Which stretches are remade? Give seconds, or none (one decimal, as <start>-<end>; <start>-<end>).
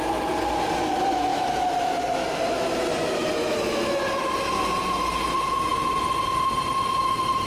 1.3-1.9; 3.4-4.0